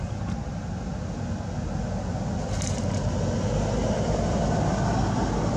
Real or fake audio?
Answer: real